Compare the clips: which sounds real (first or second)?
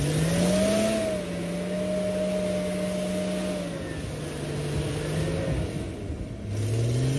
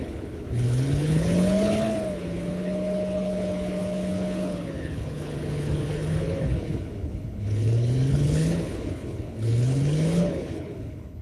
first